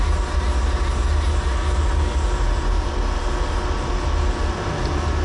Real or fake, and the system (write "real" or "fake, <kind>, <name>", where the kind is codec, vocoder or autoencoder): real